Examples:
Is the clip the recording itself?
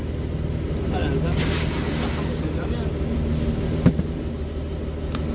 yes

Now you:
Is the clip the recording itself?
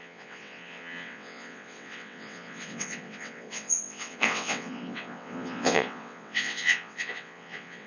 no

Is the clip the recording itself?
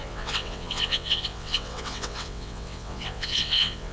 no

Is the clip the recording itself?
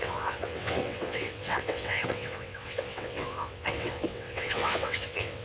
no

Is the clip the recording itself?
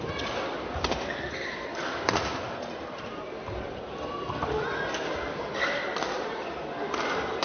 yes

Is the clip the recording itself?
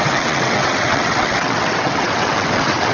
no